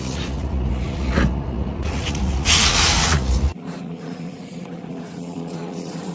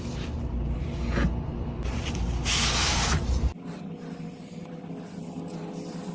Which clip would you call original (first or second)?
second